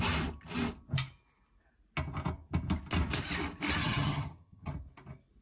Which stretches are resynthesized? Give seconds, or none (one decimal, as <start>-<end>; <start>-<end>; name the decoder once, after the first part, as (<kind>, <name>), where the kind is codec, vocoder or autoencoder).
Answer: 3.8-4.7 (vocoder, HiFi-GAN)